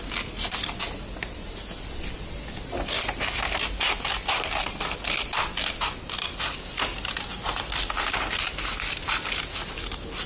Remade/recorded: recorded